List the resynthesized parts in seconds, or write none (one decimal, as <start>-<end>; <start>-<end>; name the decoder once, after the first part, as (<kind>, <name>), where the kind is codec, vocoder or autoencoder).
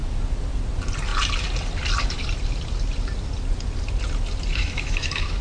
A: 4.5-5.4 (autoencoder, DAC-VAE)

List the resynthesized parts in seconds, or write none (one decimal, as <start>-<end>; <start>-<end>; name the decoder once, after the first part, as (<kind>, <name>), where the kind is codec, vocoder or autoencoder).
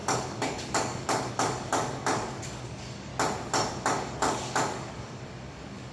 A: 0.0-3.1 (codec, DAC); 3.7-5.9